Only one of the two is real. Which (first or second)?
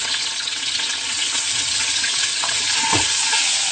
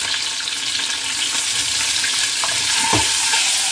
second